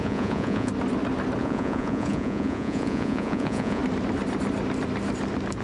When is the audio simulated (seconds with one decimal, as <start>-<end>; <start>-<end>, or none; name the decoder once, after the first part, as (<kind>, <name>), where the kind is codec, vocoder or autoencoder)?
0.0-0.7 (vocoder, Vocos); 1.4-3.8